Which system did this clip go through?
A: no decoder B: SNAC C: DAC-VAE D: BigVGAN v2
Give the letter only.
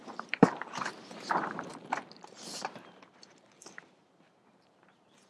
D